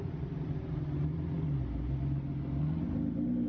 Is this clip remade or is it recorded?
recorded